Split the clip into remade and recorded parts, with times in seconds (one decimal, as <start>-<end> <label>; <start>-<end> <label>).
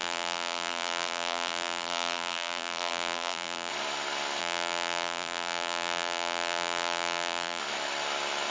0.0-3.7 remade; 3.7-4.4 recorded; 4.4-7.6 remade; 7.6-8.5 recorded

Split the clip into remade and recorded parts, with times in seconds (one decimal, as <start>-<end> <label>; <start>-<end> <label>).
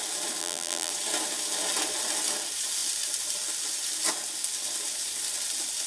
0.0-0.4 recorded; 0.4-0.9 remade; 0.9-5.9 recorded